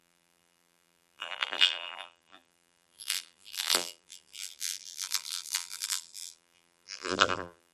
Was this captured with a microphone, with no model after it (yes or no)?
no